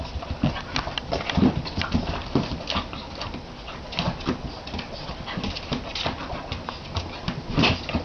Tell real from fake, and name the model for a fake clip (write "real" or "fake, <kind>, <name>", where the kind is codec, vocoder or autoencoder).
real